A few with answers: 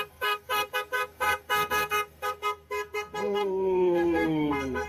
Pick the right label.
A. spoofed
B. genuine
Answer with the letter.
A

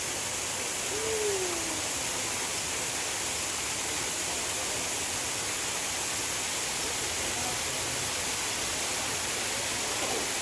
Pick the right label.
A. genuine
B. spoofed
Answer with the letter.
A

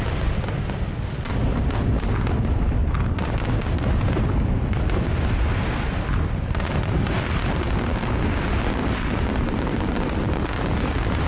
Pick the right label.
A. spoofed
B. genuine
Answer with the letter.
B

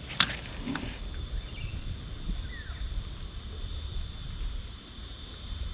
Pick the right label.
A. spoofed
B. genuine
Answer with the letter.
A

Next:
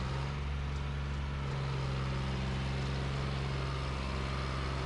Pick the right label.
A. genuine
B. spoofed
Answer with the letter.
A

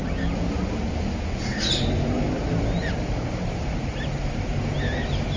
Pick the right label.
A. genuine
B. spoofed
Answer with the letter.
A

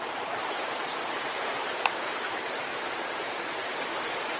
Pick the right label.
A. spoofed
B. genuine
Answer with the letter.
A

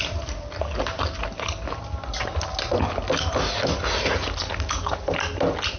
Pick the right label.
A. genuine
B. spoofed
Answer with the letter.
A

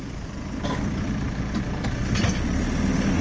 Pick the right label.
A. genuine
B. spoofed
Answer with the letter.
A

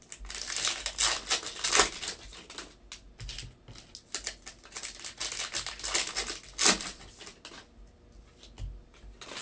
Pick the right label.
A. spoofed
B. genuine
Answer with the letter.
B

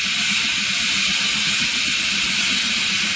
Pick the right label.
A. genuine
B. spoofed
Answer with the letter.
A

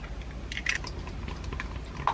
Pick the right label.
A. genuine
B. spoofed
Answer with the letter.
A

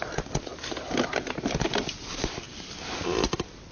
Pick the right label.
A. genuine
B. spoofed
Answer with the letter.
A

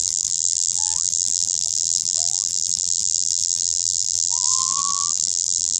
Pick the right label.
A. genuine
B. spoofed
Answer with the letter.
B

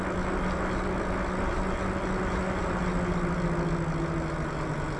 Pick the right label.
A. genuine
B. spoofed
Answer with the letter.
A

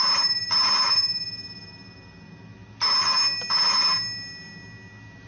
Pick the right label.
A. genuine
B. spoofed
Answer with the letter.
A